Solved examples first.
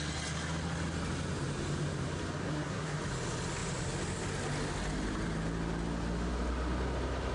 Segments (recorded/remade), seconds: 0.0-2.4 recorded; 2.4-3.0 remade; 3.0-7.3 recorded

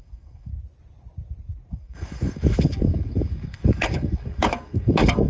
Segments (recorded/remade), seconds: 0.0-0.5 remade; 0.5-1.7 recorded; 1.7-5.3 remade